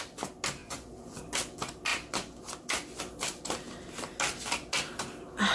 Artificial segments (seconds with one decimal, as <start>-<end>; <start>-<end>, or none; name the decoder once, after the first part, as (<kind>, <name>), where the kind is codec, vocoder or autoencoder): 0.6-1.2 (vocoder, Vocos)